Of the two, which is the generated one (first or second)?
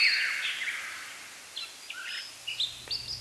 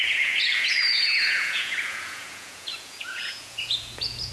second